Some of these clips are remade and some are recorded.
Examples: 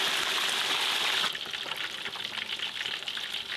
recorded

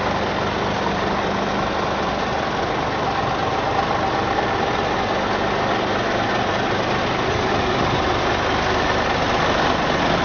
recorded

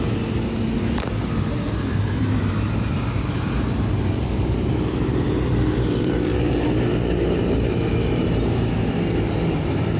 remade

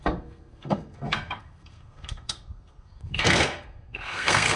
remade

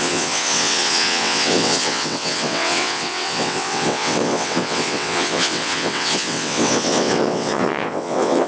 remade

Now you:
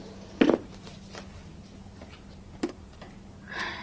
recorded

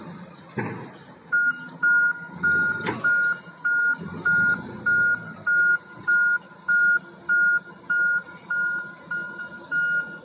recorded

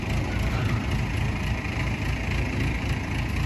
recorded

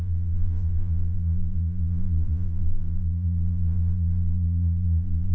remade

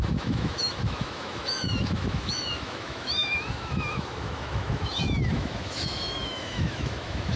remade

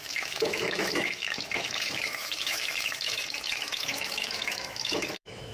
remade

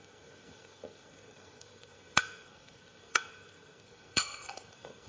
remade